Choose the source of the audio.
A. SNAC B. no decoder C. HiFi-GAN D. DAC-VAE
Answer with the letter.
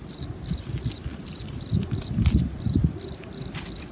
B